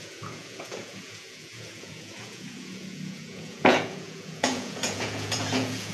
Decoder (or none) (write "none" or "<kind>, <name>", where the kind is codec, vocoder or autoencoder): vocoder, Vocos